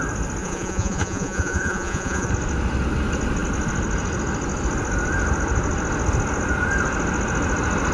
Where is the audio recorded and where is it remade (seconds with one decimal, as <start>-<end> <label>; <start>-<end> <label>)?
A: 0.0-0.4 recorded; 0.4-2.3 remade; 2.3-7.9 recorded